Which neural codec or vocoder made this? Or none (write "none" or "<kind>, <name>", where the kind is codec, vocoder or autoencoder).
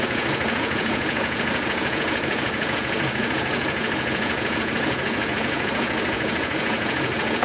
vocoder, Vocos